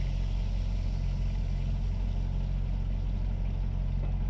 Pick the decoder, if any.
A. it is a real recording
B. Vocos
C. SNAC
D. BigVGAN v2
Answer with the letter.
A